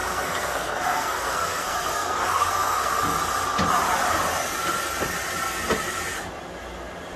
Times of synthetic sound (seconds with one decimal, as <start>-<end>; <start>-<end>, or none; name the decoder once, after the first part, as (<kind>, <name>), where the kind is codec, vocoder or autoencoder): 0.0-3.0 (codec, SNAC)